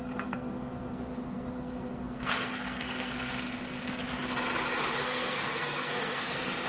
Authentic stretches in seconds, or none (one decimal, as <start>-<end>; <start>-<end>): 4.0-5.0